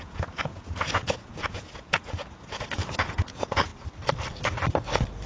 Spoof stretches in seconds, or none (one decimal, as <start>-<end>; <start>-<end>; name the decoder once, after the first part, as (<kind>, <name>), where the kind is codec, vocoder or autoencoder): 0.0-3.7 (vocoder, Vocos)